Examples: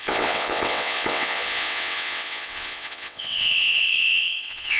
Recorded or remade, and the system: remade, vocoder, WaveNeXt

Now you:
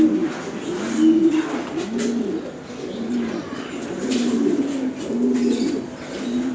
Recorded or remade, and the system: recorded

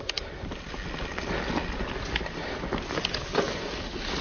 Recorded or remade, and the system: recorded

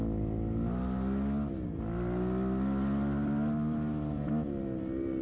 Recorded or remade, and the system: recorded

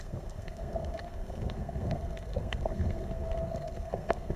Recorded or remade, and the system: remade, codec, SNAC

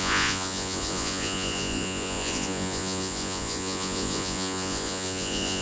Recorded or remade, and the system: remade, vocoder, Vocos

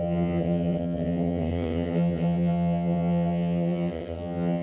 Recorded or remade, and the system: remade, vocoder, HiFi-GAN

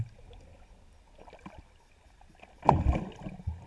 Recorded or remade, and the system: recorded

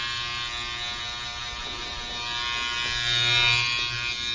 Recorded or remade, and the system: recorded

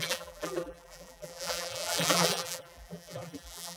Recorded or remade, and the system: remade, vocoder, BigVGAN v2